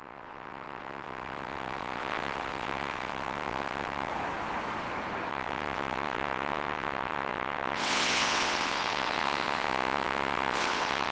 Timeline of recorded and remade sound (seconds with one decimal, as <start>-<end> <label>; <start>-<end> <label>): 0.0-4.1 remade; 4.1-5.3 recorded; 5.3-11.1 remade